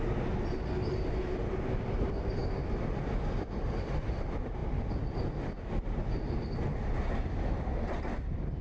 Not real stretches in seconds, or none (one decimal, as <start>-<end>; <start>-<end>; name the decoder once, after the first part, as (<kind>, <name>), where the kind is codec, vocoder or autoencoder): none